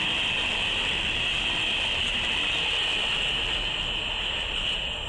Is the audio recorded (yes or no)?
yes